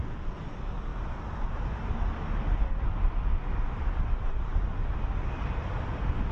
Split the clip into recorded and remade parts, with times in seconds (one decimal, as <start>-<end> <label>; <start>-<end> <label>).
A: 0.0-6.3 recorded